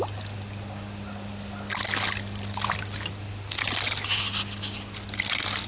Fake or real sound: real